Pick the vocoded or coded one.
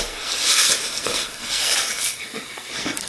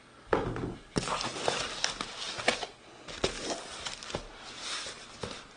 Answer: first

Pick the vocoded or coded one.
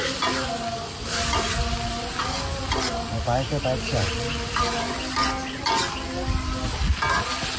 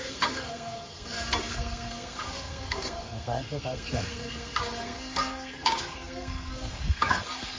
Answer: second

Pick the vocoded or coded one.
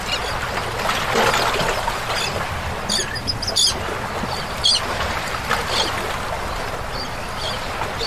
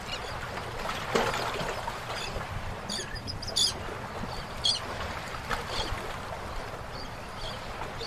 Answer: second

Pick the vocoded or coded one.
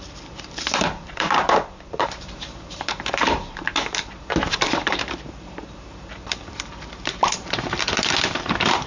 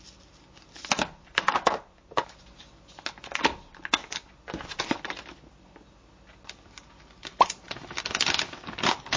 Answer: first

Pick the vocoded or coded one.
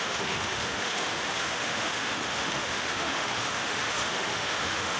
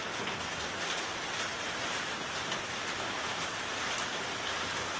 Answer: first